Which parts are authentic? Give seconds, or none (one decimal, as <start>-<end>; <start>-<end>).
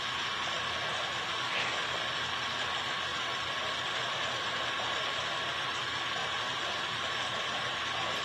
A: 0.0-1.3; 2.0-8.2